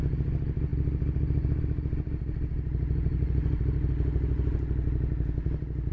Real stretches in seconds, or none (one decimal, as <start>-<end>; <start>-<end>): 0.0-5.9